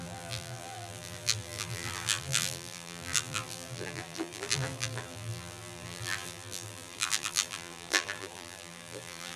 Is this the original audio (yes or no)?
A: no